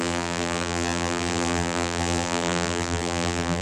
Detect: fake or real fake